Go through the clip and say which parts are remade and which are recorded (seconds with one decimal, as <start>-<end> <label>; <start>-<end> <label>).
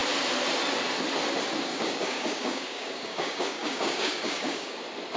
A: 0.0-1.7 recorded; 1.7-4.8 remade; 4.8-5.2 recorded